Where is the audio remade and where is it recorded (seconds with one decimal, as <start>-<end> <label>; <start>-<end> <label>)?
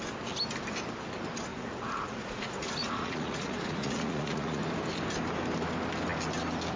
0.0-1.5 recorded; 1.5-4.6 remade; 4.6-6.8 recorded